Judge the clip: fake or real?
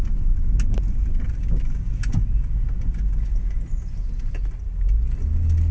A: real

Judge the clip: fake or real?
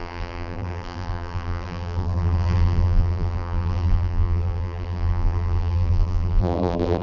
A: fake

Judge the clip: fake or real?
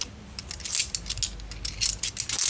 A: real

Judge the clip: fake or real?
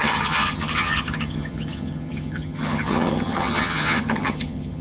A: fake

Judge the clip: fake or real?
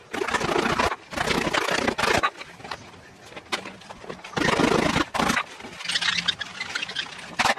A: real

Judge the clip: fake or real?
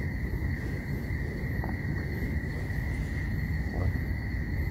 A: real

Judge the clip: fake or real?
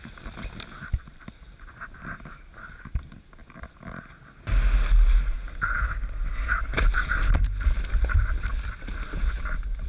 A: real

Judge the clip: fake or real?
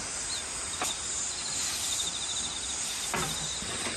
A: real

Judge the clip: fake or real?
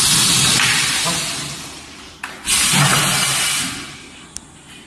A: real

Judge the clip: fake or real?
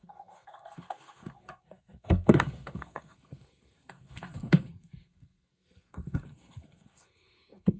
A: fake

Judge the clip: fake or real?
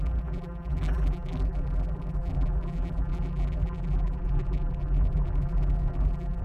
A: fake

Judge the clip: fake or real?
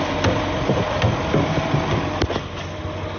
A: real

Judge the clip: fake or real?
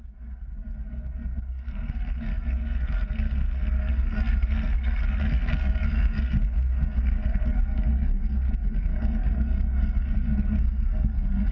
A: fake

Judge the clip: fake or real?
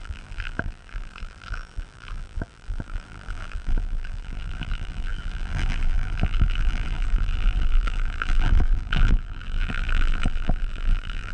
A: fake